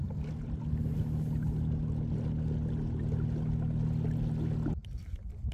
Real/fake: real